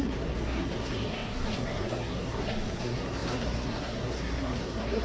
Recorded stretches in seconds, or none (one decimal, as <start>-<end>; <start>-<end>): none